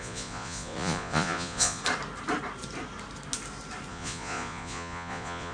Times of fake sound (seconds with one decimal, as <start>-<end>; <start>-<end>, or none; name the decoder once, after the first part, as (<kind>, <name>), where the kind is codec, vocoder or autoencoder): 0.0-1.8 (vocoder, Vocos); 3.9-5.5